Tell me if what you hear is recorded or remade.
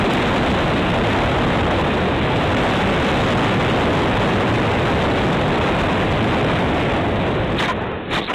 recorded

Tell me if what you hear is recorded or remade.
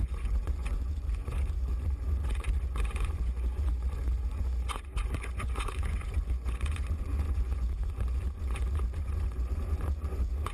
remade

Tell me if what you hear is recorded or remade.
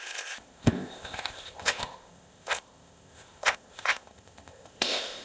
remade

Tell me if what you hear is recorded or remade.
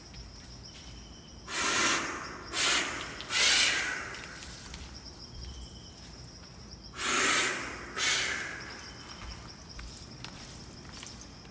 recorded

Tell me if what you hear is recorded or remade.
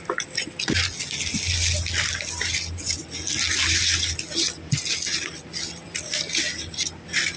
recorded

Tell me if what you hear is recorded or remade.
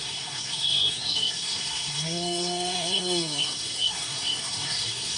remade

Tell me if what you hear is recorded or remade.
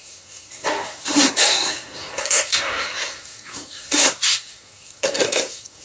remade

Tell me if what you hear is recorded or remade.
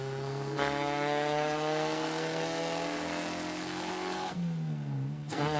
remade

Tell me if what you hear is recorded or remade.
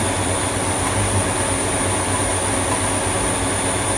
recorded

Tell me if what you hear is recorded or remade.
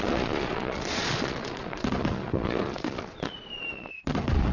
remade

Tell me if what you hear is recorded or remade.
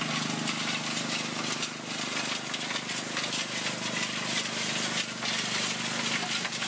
recorded